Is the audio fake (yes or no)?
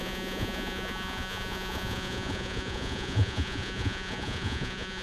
yes